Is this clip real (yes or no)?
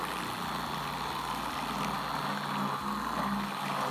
yes